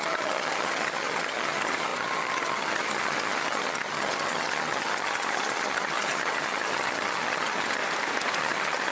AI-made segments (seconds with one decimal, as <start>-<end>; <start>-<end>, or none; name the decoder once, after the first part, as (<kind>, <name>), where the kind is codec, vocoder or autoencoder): 0.0-7.8 (vocoder, HiFi-GAN); 8.4-8.9